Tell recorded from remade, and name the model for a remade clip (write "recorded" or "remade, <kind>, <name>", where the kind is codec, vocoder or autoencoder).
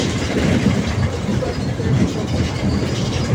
remade, vocoder, BigVGAN v2